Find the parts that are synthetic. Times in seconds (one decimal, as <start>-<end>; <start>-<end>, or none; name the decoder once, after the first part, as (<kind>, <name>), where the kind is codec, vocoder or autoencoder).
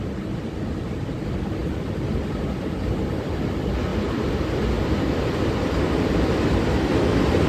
none